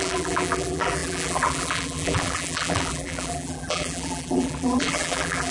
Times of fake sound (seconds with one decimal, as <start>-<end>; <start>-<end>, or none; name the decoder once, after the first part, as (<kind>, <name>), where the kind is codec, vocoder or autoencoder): 0.0-5.5 (vocoder, BigVGAN v2)